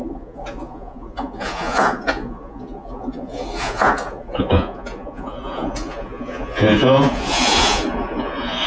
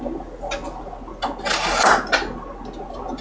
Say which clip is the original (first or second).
second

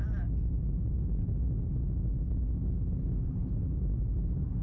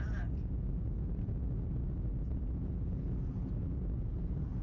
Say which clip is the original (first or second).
first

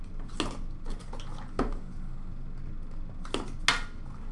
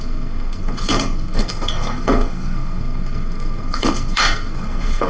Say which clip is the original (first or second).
first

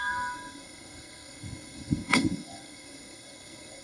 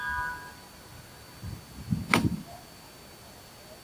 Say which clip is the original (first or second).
second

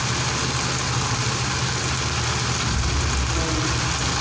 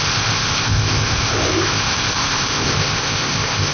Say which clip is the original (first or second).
first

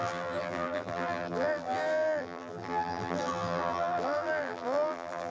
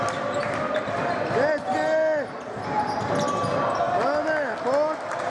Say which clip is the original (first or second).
second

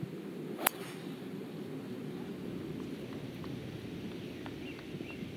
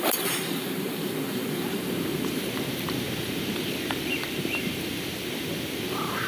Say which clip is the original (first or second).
first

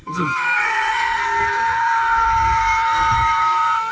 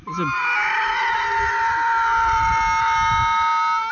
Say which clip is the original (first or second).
second